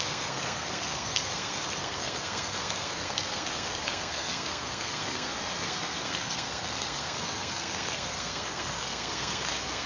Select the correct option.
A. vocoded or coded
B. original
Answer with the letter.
A